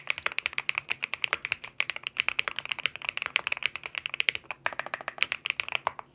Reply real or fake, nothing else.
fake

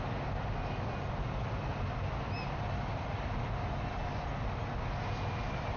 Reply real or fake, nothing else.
real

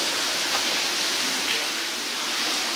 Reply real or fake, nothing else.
real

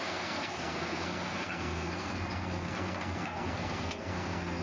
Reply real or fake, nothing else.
fake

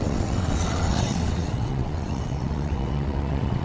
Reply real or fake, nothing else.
fake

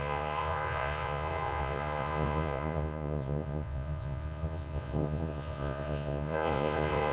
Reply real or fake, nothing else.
fake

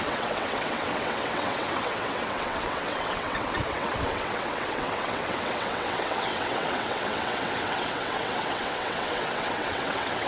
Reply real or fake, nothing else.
fake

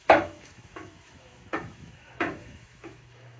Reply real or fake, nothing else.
fake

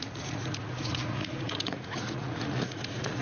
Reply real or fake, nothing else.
fake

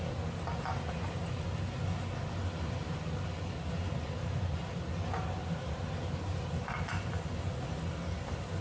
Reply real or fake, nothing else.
real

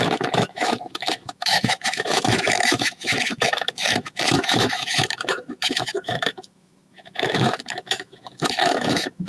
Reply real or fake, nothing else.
fake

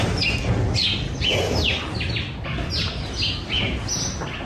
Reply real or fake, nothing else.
real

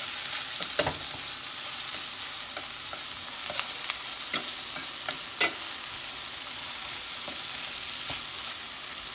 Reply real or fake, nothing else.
real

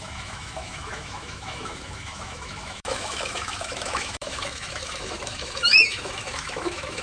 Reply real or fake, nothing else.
fake